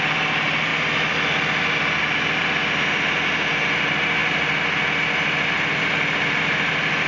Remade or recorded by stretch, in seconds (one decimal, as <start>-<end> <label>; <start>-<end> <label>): 0.0-7.1 recorded